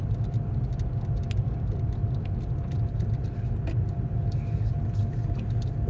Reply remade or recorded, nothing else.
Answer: recorded